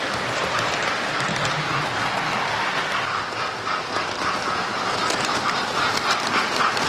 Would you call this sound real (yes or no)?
no